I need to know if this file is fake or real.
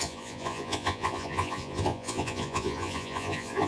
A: fake